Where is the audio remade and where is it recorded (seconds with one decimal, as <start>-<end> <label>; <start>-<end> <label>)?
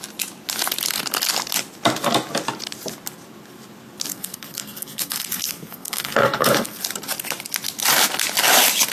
0.0-4.1 recorded; 4.1-6.8 remade; 6.8-8.9 recorded